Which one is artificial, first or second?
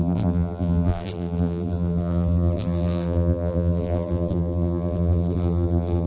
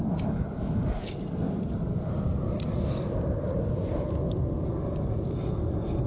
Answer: first